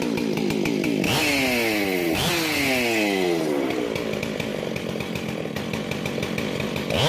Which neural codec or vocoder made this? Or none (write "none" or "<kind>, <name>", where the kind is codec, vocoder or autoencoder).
none